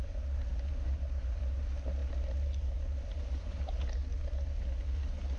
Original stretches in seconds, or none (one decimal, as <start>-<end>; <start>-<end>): 0.0-5.4